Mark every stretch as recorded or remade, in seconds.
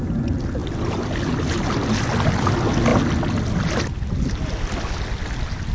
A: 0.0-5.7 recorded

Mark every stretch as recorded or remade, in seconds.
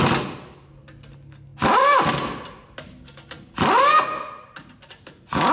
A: 0.0-5.5 recorded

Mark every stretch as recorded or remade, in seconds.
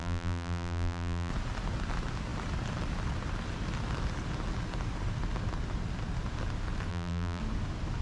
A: 0.0-1.3 remade; 1.3-6.9 recorded; 6.9-7.4 remade; 7.4-8.0 recorded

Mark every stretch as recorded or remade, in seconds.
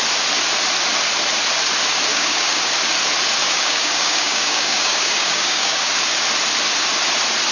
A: 0.0-2.1 recorded; 2.1-2.7 remade; 2.7-3.4 recorded; 3.4-5.9 remade; 5.9-7.5 recorded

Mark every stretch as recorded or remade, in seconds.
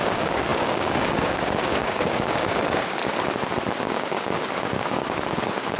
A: 0.0-3.0 remade; 3.0-3.8 recorded; 3.8-5.8 remade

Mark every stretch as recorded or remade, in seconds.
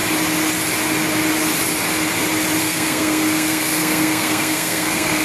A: 0.0-2.6 recorded; 2.6-5.2 remade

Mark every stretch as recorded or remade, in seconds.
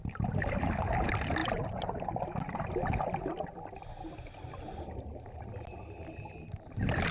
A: 0.0-7.1 recorded